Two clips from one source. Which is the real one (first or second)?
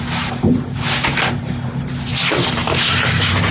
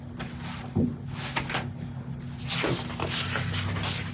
second